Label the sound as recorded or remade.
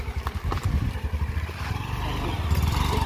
remade